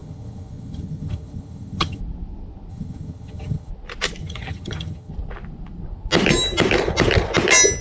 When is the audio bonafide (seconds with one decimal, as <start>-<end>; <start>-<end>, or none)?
2.0-2.7; 3.7-4.2; 5.1-7.8